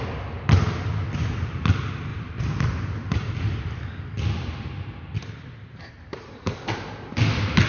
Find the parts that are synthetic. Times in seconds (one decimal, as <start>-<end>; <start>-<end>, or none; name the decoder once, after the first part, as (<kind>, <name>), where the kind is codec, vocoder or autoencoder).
2.1-3.3 (vocoder, BigVGAN v2); 5.7-7.1